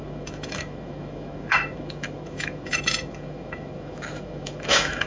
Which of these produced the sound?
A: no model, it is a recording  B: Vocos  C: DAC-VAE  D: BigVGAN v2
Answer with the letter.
C